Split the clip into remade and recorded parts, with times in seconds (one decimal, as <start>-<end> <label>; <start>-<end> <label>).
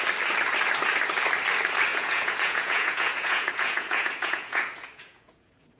0.0-1.9 recorded; 1.9-5.8 remade